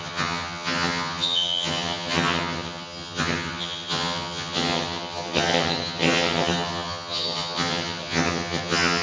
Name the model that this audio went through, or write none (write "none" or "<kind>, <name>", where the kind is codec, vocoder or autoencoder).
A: vocoder, HiFi-GAN